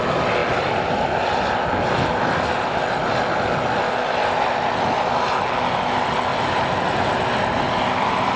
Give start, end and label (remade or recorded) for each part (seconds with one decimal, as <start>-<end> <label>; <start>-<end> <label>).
0.0-8.4 recorded